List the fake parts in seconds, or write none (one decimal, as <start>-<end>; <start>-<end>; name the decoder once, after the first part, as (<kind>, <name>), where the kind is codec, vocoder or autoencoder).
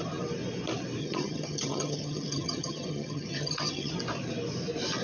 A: 1.0-3.9 (vocoder, HiFi-GAN)